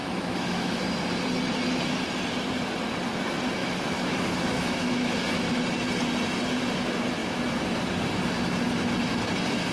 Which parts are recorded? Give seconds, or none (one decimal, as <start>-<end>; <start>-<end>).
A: 0.8-3.6; 5.6-9.7